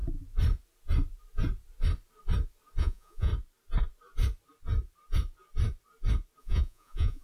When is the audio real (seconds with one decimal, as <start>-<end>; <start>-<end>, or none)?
0.0-2.8; 3.3-6.4